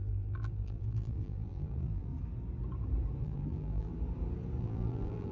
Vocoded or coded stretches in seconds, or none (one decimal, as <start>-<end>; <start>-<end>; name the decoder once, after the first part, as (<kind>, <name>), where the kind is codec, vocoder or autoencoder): 0.0-2.1 (vocoder, BigVGAN v2); 3.2-3.9; 4.6-5.3